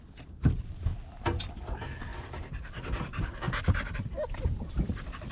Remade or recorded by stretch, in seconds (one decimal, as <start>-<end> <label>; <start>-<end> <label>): 0.0-2.1 recorded; 2.1-4.4 remade; 4.4-5.3 recorded